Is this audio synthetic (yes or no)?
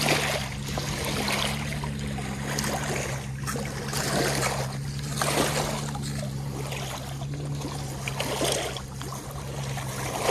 no